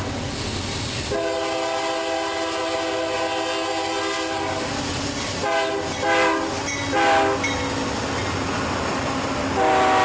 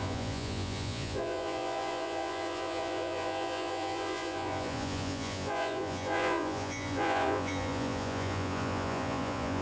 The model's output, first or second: second